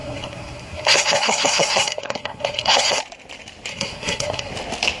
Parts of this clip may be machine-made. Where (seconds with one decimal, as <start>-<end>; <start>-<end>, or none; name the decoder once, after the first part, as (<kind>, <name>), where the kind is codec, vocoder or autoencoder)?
0.0-3.0 (codec, SNAC); 3.7-4.5